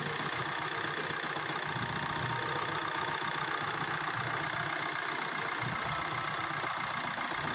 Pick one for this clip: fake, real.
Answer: real